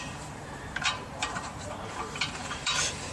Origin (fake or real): fake